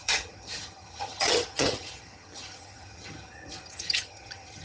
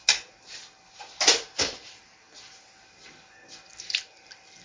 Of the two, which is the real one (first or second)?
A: second